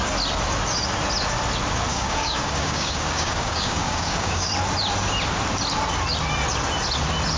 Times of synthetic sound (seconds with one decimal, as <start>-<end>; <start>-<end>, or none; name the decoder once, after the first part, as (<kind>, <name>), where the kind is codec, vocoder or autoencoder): 1.9-4.5 (codec, DAC)